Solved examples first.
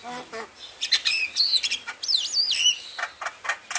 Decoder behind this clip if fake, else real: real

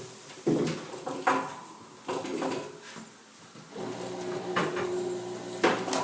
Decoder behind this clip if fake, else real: real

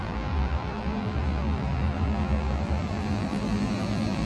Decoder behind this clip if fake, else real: fake, vocoder, BigVGAN v2